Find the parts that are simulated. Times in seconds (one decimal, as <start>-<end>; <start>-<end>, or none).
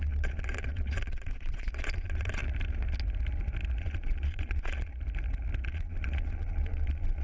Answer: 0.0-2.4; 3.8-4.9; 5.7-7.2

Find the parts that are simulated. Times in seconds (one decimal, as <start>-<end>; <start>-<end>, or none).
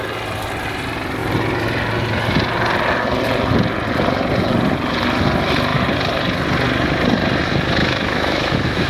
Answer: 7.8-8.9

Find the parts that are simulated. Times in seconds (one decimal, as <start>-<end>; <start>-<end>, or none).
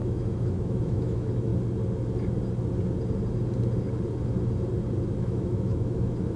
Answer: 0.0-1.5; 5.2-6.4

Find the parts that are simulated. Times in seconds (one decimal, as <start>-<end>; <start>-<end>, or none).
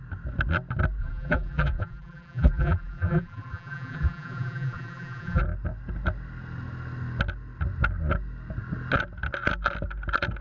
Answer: 1.0-5.4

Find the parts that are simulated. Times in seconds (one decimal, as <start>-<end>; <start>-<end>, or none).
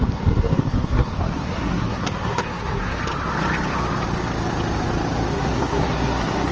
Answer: 0.0-3.0; 5.3-6.5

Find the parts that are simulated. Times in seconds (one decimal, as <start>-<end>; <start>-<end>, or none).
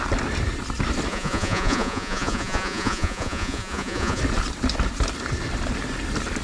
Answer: 1.1-4.2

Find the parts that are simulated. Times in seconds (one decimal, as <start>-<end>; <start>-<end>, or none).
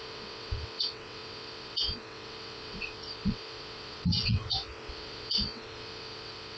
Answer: 0.0-6.6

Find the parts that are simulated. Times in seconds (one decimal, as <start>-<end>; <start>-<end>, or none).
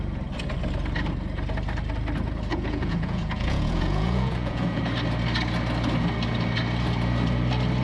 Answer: 2.5-4.8